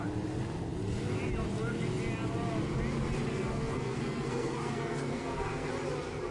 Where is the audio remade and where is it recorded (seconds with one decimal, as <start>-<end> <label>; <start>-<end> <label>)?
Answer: 0.0-3.3 recorded; 3.3-5.7 remade; 5.7-6.3 recorded